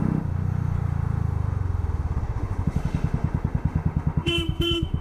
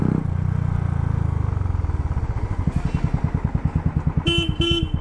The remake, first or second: first